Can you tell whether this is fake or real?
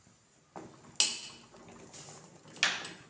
real